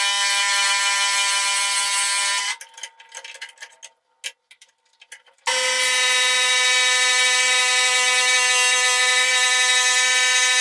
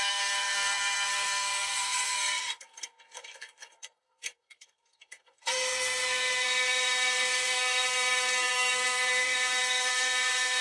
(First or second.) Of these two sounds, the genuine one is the first